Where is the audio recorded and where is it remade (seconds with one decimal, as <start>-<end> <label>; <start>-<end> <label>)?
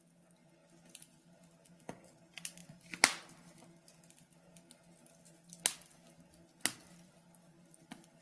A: 0.0-8.2 recorded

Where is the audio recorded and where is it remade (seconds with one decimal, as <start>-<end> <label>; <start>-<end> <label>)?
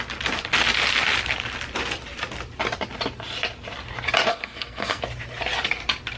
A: 0.0-4.3 recorded; 4.3-5.0 remade; 5.0-6.2 recorded